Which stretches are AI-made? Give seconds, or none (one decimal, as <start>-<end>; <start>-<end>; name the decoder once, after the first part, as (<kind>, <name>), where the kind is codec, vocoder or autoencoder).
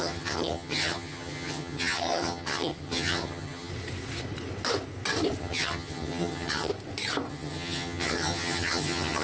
0.0-3.7 (vocoder, HiFi-GAN); 5.4-6.7; 7.3-9.2